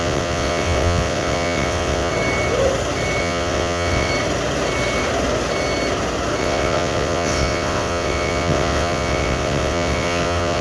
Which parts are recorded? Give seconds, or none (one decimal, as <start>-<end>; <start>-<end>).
2.1-3.2; 4.1-6.4